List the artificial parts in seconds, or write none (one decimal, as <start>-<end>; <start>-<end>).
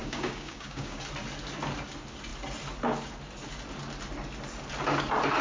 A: 0.0-1.0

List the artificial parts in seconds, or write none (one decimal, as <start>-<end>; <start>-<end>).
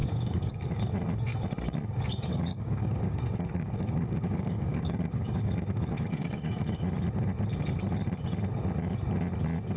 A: 0.0-0.8; 2.3-6.8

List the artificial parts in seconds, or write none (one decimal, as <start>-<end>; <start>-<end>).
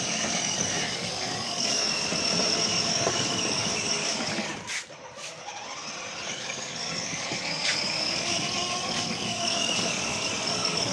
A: 0.0-2.1; 2.8-4.5; 6.2-10.9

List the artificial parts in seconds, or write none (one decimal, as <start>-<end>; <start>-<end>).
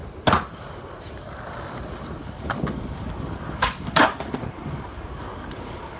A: 2.2-6.0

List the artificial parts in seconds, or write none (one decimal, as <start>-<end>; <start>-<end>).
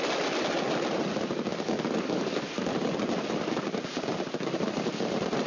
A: 1.5-2.7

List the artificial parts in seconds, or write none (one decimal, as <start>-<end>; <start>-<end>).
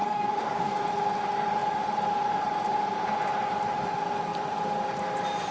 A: 0.0-0.7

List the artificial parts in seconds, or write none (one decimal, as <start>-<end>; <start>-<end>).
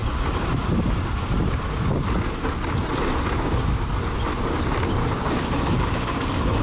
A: 5.0-6.6